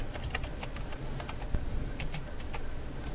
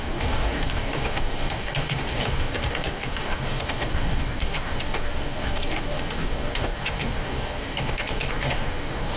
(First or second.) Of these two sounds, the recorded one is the first